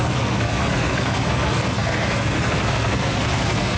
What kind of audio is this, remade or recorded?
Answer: remade